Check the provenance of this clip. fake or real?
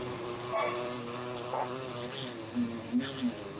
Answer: real